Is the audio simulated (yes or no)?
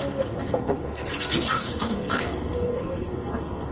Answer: yes